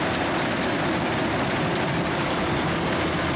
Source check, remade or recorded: recorded